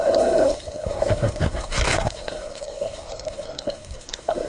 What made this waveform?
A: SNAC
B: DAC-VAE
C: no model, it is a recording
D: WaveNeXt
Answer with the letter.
A